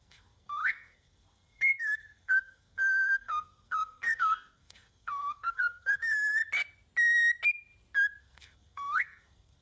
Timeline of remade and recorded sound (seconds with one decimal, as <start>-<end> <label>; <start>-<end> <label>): 0.0-6.4 remade; 6.4-8.2 recorded; 8.2-9.6 remade